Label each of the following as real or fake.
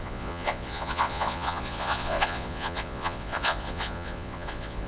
fake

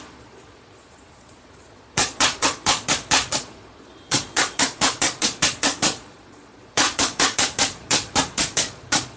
fake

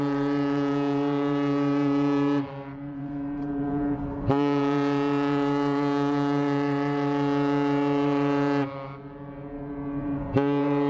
fake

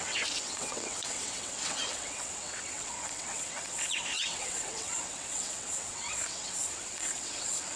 fake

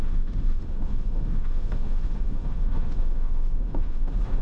fake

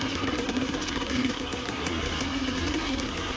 fake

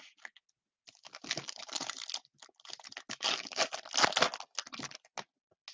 real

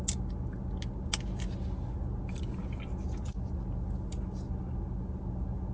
real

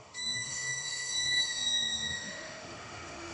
fake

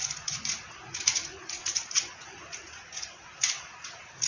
fake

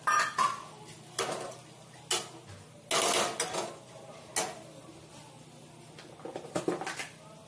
real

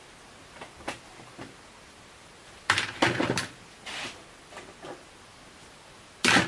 real